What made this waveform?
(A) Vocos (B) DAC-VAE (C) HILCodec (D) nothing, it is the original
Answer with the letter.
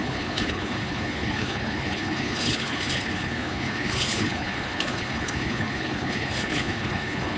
C